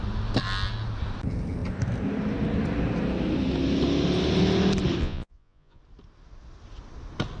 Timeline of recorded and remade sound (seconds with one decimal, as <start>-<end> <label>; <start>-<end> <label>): 0.0-5.0 recorded; 5.0-5.8 remade; 5.8-7.4 recorded